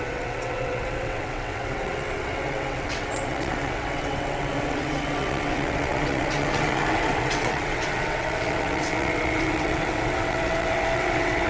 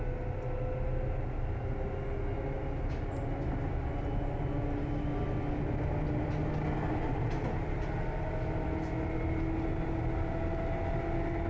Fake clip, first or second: first